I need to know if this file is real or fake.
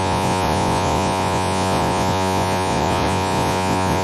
fake